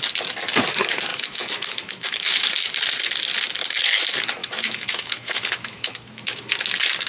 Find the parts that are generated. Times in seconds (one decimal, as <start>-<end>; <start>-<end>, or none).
1.1-2.5; 4.4-6.5